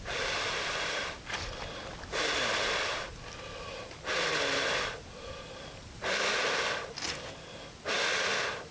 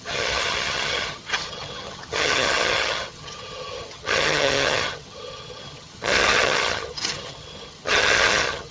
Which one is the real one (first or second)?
first